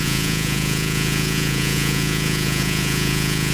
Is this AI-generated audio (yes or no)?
yes